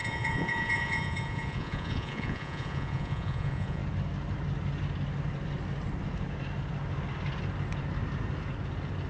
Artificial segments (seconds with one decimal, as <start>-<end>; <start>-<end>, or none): 0.0-3.8